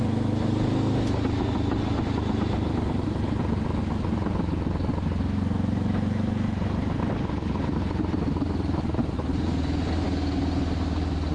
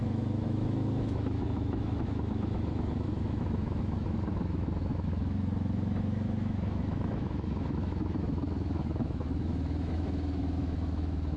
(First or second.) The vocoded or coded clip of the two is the second